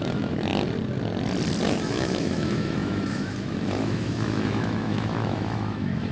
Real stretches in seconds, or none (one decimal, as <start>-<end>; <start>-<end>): 0.5-1.6